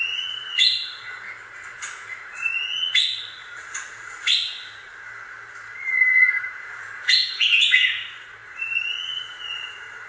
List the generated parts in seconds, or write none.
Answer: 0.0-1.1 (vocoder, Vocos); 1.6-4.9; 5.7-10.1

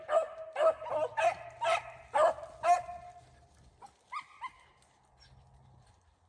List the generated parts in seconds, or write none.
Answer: none

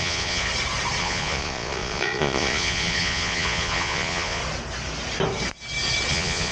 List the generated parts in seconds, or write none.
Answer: 0.0-0.5 (vocoder, Vocos); 1.0-4.4; 6.1-6.5

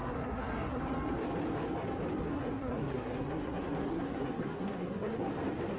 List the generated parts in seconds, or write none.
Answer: 0.0-0.8 (codec, SNAC); 2.2-5.3